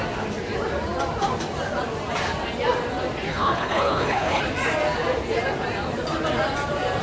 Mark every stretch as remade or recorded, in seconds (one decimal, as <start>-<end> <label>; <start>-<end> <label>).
0.0-3.3 recorded; 3.3-4.4 remade; 4.4-7.0 recorded